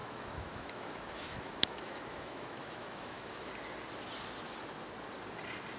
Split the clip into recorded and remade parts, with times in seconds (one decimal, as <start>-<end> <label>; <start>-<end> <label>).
0.0-3.5 remade; 3.5-5.8 recorded